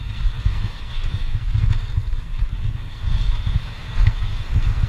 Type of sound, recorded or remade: remade